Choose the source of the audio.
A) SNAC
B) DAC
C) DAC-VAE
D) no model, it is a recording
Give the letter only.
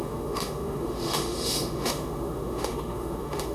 C